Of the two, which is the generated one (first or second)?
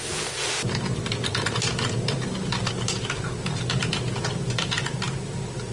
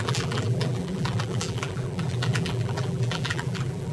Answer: second